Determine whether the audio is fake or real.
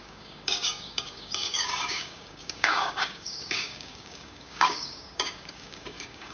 fake